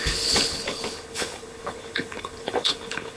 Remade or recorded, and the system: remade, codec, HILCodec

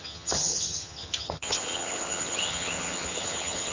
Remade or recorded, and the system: remade, vocoder, HiFi-GAN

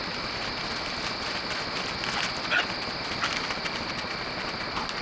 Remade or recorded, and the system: recorded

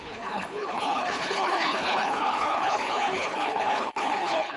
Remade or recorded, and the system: remade, codec, HILCodec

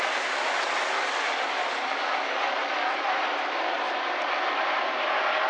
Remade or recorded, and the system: recorded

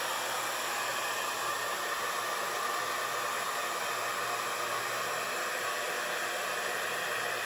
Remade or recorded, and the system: recorded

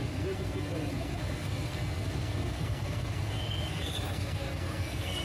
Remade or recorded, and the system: remade, codec, SNAC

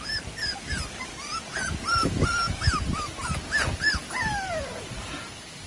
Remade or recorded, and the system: recorded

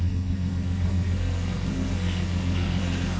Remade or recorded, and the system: remade, codec, SNAC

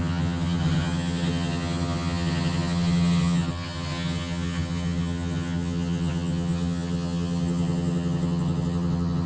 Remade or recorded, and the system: remade, vocoder, HiFi-GAN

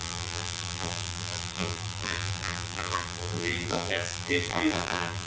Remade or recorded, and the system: remade, vocoder, BigVGAN v2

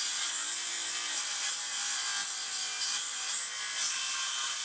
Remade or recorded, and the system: recorded